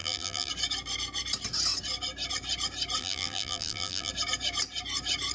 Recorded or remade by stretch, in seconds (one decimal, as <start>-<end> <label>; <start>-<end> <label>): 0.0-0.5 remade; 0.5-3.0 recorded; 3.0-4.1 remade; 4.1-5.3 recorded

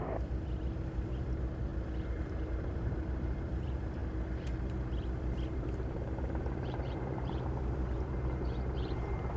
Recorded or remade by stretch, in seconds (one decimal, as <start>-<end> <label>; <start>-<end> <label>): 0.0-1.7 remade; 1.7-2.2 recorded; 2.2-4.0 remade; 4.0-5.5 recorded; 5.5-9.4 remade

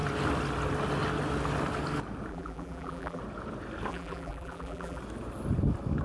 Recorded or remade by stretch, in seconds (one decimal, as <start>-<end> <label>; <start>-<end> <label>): 0.0-2.3 recorded; 2.3-3.2 remade; 3.2-3.9 recorded; 3.9-5.0 remade; 5.0-6.0 recorded

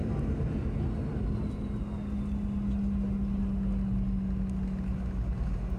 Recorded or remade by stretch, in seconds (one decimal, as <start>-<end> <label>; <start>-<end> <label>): 0.0-5.8 recorded

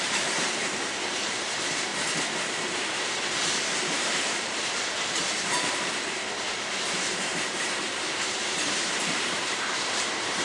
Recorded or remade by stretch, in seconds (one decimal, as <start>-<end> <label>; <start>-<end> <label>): 0.0-1.9 remade; 1.9-2.4 recorded; 2.4-10.4 remade

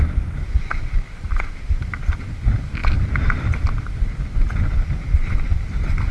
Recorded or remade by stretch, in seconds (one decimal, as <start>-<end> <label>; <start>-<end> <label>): 0.0-6.1 recorded